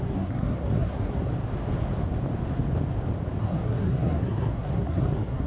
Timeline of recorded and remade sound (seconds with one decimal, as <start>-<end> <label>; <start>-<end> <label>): 0.0-1.3 remade; 1.3-3.4 recorded; 3.4-5.5 remade